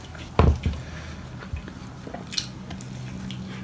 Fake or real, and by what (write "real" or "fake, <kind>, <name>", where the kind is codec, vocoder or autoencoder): real